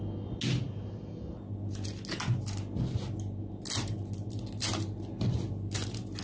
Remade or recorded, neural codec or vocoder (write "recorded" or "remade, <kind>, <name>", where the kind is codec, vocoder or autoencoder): recorded